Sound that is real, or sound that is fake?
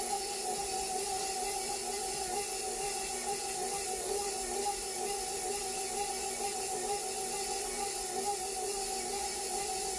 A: real